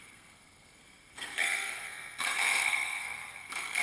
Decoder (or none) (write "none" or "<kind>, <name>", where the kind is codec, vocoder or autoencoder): codec, SNAC